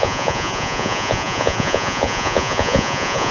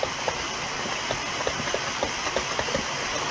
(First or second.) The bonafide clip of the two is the second